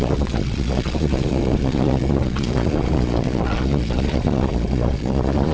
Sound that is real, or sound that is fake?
fake